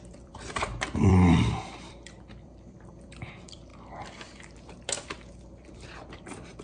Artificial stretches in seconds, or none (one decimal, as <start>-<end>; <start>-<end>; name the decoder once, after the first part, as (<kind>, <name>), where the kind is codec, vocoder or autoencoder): 0.0-1.1 (vocoder, BigVGAN v2); 1.9-3.7; 4.7-6.6